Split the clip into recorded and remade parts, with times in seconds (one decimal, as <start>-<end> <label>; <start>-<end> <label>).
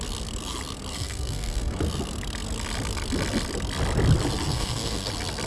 0.0-0.9 recorded; 0.9-1.8 remade; 1.8-4.5 recorded; 4.5-5.1 remade; 5.1-5.5 recorded